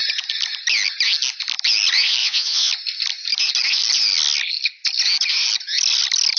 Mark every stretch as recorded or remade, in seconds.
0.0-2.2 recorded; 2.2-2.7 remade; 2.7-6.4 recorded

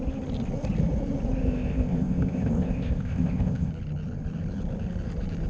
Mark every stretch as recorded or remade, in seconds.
0.0-1.4 recorded; 1.4-3.7 remade; 3.7-5.5 recorded

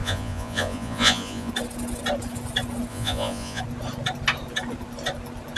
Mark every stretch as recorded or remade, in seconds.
0.0-1.5 remade; 1.5-2.9 recorded; 2.9-3.6 remade; 3.6-5.6 recorded